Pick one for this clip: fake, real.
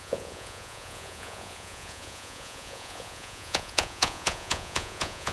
fake